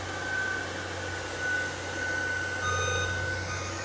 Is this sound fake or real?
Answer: real